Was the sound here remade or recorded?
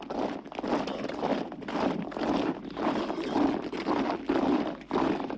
recorded